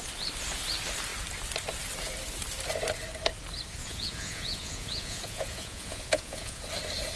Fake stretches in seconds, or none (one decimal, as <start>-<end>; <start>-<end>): 3.8-6.6